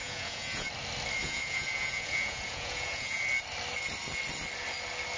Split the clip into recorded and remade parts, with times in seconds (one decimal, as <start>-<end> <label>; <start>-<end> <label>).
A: 0.0-0.7 remade; 0.7-1.2 recorded; 1.2-3.2 remade; 3.2-5.2 recorded